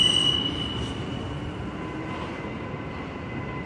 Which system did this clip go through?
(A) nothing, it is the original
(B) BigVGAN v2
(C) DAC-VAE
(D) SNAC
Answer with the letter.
A